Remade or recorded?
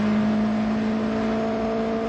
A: recorded